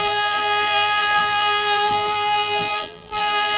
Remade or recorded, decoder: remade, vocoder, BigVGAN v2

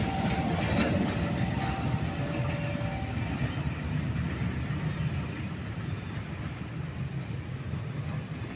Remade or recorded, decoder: recorded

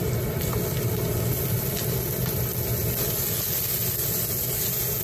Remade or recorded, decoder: recorded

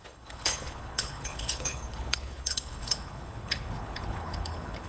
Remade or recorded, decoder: remade, codec, HILCodec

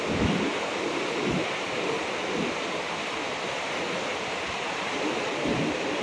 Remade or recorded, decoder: recorded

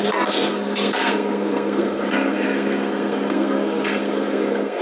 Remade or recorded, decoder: remade, codec, SNAC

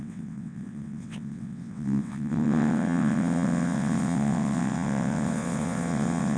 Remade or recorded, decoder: remade, vocoder, WaveNeXt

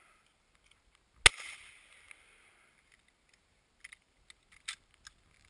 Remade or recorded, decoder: recorded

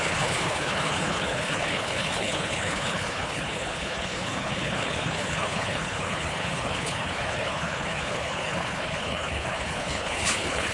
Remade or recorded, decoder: remade, codec, HILCodec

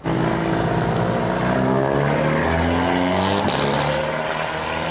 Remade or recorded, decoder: recorded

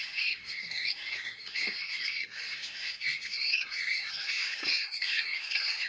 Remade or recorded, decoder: remade, codec, SNAC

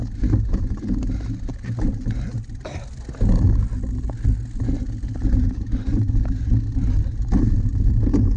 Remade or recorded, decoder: recorded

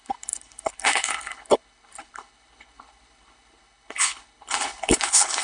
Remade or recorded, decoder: remade, codec, HILCodec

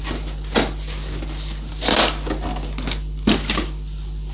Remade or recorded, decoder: recorded